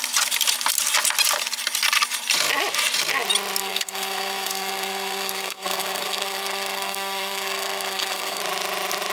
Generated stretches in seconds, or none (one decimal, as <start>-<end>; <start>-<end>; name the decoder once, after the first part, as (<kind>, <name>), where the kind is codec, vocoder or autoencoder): 3.6-8.4 (codec, SNAC)